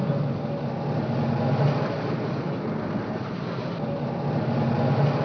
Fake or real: real